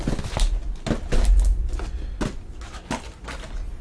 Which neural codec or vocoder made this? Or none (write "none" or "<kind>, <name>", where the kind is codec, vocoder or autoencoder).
none